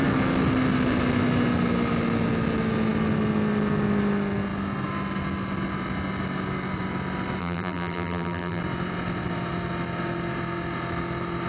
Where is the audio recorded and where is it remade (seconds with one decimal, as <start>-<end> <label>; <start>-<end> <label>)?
0.0-7.4 recorded; 7.4-8.6 remade; 8.6-11.5 recorded